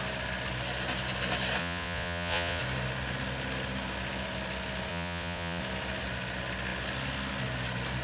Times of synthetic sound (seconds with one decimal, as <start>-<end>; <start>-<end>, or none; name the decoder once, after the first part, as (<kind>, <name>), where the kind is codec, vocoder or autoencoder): 1.6-2.6 (vocoder, Vocos); 4.9-5.6